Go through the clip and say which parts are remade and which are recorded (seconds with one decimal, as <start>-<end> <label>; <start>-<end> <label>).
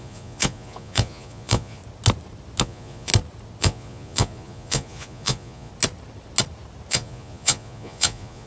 0.0-1.8 remade; 1.8-2.6 recorded; 2.6-3.1 remade; 3.1-3.6 recorded; 3.6-5.7 remade; 5.7-6.9 recorded; 6.9-8.5 remade